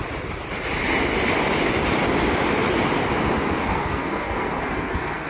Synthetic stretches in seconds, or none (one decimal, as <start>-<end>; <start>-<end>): 3.4-5.3